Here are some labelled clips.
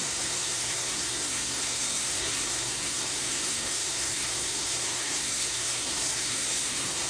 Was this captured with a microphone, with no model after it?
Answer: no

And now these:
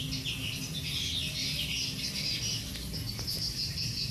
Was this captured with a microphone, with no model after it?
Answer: yes